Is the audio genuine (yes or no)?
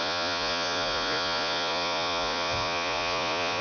no